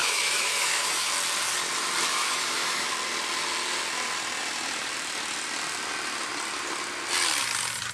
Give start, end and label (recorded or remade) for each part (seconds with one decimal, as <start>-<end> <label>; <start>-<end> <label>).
0.0-1.1 remade; 1.1-2.1 recorded; 2.1-2.9 remade; 2.9-7.9 recorded